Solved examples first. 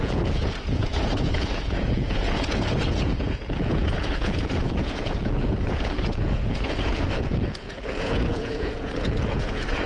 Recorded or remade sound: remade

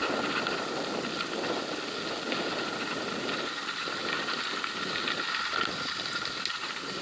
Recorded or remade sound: recorded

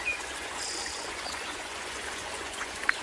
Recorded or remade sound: remade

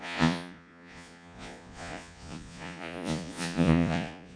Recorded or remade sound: remade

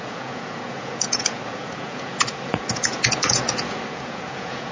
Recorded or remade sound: remade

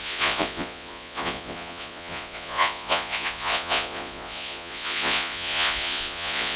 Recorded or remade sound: remade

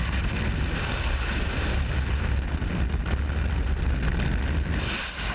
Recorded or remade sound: recorded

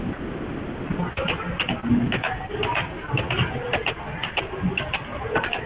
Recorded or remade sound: recorded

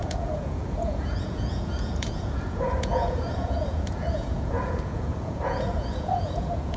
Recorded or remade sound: remade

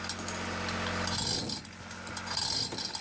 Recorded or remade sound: recorded